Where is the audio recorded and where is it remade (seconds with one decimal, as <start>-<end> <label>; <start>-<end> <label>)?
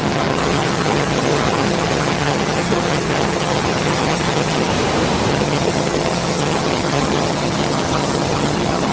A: 0.0-4.7 remade; 4.7-5.3 recorded; 5.3-8.9 remade